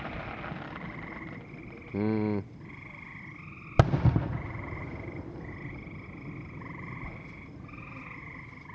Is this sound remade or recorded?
recorded